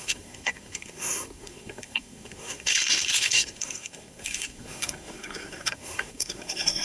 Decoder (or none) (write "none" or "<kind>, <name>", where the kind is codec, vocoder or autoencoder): codec, SNAC